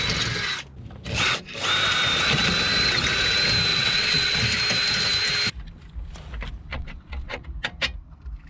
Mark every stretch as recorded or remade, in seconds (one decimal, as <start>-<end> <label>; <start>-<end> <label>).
0.0-3.7 recorded; 3.7-4.4 remade; 4.4-6.7 recorded; 6.7-7.4 remade; 7.4-8.5 recorded